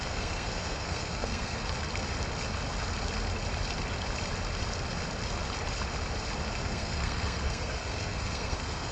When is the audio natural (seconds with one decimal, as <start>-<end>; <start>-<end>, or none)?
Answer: 1.6-6.6